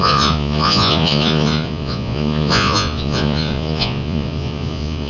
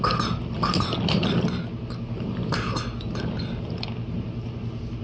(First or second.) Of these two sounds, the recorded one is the second